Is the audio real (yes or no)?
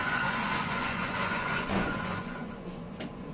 no